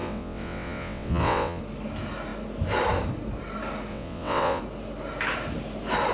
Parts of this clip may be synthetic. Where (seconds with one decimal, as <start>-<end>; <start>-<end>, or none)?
0.0-1.6; 3.9-4.6